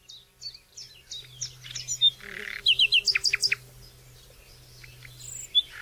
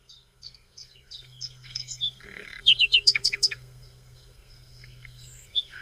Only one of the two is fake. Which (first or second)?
second